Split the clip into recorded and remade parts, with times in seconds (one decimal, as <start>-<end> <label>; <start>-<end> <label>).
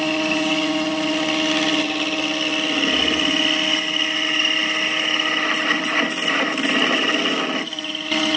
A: 0.0-8.4 recorded